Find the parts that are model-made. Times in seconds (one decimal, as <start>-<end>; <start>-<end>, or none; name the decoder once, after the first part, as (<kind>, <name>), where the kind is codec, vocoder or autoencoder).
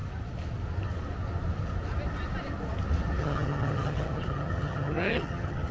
3.2-5.7 (vocoder, HiFi-GAN)